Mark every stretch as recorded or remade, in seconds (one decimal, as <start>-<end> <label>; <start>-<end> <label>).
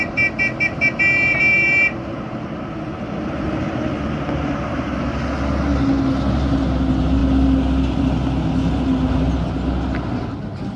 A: 0.0-10.8 recorded